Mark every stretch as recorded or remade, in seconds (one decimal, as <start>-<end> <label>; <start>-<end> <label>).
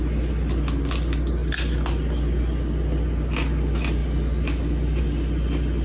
0.0-5.8 recorded